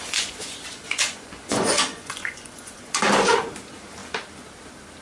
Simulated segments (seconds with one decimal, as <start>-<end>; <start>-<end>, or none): 0.0-3.0